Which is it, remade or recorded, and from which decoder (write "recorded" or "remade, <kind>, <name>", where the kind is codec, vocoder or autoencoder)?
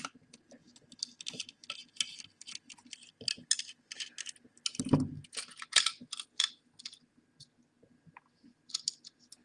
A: recorded